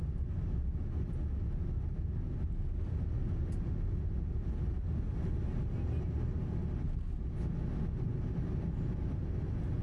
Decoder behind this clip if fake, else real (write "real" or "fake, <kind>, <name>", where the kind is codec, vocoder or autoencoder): real